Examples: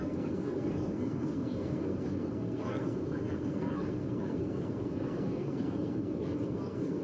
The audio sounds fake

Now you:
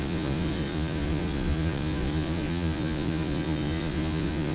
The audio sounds fake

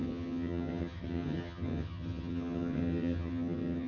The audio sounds fake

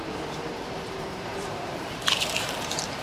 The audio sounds fake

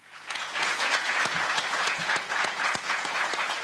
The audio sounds fake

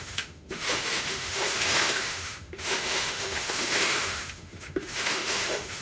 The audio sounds fake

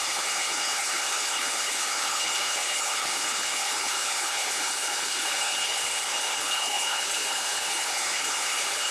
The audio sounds fake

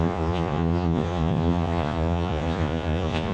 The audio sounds fake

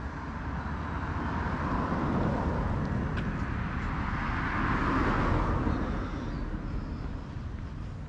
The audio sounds real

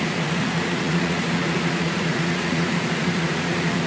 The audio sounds fake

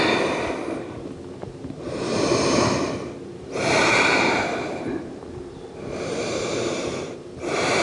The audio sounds fake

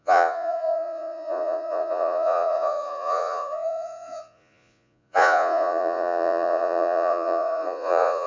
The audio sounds fake